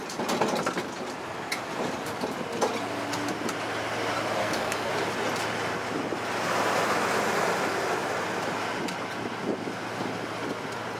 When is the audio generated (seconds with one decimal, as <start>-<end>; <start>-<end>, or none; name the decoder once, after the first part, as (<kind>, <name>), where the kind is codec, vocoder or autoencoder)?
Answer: 4.4-4.9 (codec, SNAC)